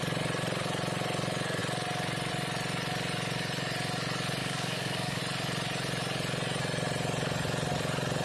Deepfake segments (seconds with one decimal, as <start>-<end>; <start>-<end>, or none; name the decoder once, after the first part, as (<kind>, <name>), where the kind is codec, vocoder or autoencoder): 4.4-5.2 (codec, DAC)

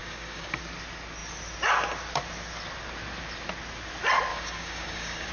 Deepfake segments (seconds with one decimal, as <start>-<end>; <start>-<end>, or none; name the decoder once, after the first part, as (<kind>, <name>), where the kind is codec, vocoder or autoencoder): 0.0-0.6 (codec, DAC); 4.3-5.3

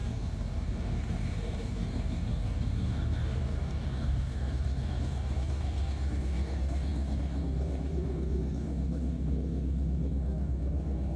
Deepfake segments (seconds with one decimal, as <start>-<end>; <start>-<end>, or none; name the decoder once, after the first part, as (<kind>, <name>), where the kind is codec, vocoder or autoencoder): 0.0-11.2 (codec, DAC)

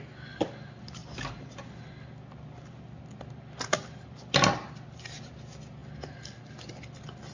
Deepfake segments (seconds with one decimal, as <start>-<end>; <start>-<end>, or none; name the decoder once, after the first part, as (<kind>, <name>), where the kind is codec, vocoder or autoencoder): none

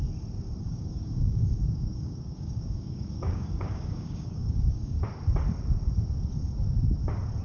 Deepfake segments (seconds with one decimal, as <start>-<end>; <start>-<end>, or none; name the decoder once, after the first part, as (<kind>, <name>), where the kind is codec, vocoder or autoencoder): 0.6-5.0 (codec, DAC)

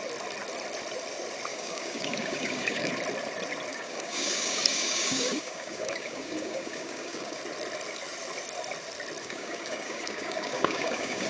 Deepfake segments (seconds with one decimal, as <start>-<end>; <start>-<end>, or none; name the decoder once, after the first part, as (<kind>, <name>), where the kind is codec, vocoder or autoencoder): 1.5-2.9 (codec, DAC); 3.7-7.4; 9.2-11.3

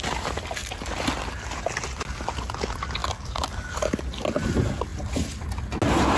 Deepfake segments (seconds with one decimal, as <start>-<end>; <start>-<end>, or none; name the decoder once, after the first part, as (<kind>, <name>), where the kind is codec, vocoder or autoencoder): 3.0-4.0 (codec, DAC)